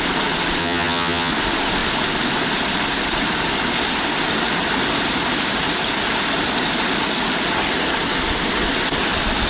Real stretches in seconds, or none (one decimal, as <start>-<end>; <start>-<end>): 0.0-0.6; 1.3-9.5